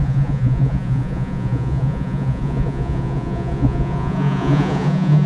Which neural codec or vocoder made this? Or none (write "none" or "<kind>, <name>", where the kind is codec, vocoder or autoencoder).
vocoder, Vocos